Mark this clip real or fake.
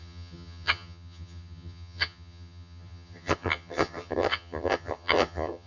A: fake